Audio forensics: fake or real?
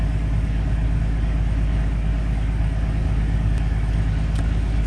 fake